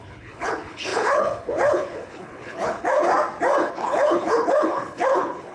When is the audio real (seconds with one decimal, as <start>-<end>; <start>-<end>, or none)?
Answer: 3.1-3.7